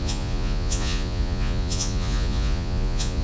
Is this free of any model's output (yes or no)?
no